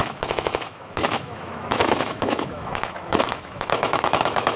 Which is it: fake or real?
fake